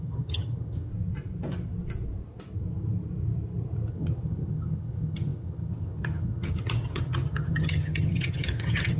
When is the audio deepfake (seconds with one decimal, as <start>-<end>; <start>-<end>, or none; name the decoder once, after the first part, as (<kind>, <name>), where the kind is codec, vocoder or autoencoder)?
0.0-0.9 (vocoder, HiFi-GAN); 3.9-9.0